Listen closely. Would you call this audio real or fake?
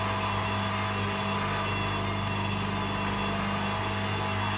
real